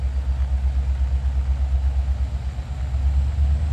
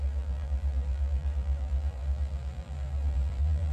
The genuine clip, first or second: first